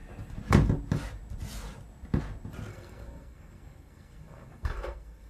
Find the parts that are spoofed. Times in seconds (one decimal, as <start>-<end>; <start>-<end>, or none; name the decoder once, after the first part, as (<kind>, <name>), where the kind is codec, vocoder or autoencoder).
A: 2.7-5.3 (codec, SNAC)